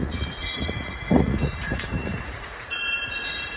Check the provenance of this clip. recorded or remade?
remade